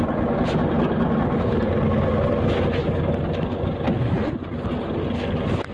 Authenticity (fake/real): real